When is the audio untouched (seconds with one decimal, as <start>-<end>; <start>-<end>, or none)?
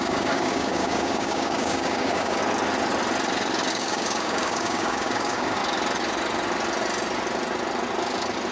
2.4-3.7; 5.6-8.5